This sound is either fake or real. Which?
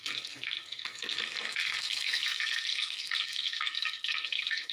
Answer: fake